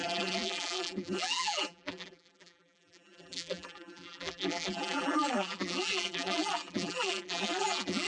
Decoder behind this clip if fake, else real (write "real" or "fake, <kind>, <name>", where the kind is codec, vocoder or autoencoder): fake, vocoder, BigVGAN v2